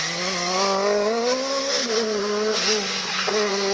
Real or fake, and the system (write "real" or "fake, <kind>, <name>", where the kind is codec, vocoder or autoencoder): real